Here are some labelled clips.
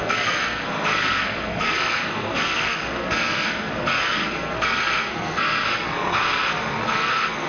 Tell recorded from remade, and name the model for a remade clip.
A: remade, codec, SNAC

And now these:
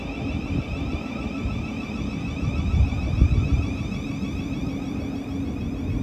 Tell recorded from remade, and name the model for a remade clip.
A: recorded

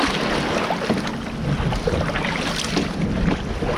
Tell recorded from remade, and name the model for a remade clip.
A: recorded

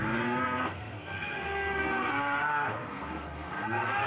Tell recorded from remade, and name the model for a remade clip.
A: remade, codec, SNAC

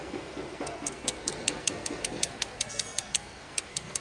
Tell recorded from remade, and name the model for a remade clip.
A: remade, codec, SNAC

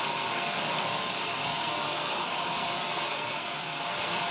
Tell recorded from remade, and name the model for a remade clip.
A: remade, codec, SNAC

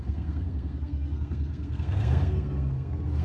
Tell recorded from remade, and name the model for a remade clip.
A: remade, codec, SNAC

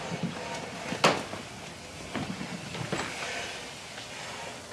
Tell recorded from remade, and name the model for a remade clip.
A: recorded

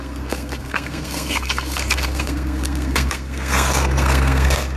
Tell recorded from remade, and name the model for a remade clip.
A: remade, codec, SNAC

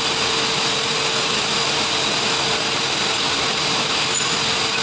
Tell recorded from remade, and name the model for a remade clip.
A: recorded